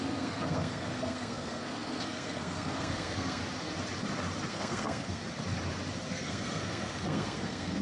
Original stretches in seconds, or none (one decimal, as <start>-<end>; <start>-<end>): 3.4-4.5; 5.2-6.1